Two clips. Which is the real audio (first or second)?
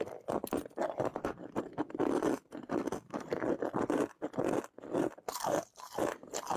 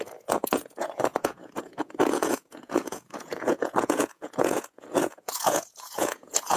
first